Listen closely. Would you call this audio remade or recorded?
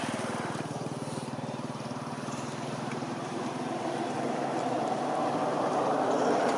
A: remade